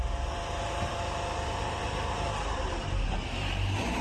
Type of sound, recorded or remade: remade